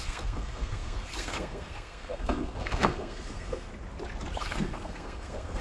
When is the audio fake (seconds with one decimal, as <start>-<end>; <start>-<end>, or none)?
0.0-3.7; 4.4-5.6